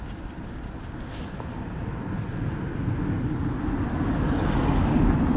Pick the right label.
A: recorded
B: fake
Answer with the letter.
A